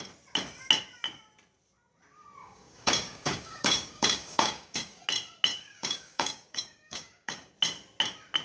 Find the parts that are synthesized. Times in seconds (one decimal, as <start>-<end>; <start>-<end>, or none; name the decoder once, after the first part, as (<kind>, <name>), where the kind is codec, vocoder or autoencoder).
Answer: 2.4-5.0 (codec, DAC); 5.5-7.5